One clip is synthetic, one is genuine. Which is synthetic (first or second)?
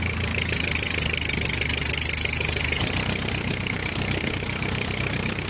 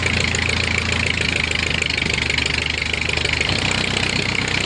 first